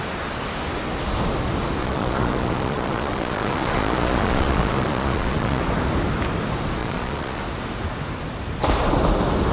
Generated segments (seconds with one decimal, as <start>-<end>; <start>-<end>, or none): 1.8-5.6; 6.8-7.4